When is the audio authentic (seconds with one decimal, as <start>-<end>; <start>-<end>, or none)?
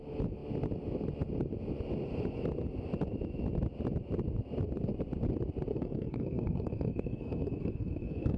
0.0-5.7